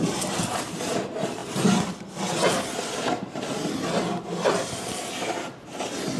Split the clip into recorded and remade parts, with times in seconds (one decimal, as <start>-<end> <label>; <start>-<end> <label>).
0.0-6.2 recorded